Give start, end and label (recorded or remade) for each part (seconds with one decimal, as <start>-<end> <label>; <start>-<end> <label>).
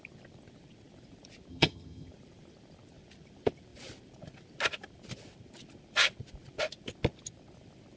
0.0-1.5 recorded; 1.5-2.1 remade; 2.1-8.0 recorded